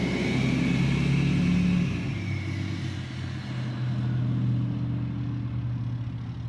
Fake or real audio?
real